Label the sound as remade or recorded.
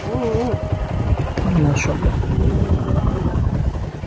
recorded